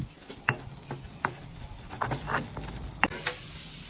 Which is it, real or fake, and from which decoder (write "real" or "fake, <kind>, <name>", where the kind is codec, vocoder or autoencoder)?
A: real